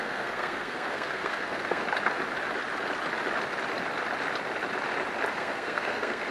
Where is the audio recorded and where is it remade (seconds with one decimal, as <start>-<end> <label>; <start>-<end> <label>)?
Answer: 0.0-1.8 remade; 1.8-5.3 recorded; 5.3-6.3 remade